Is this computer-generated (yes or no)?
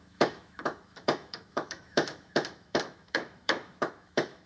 yes